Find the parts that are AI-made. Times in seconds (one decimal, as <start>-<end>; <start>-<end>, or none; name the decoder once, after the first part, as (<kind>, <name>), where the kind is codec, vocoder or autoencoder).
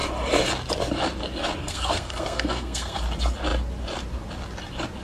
1.6-3.0 (codec, SNAC)